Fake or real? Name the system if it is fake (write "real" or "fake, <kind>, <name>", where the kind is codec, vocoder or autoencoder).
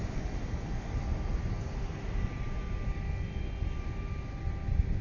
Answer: real